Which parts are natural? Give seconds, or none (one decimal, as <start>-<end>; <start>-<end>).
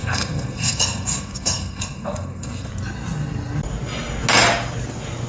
2.7-5.3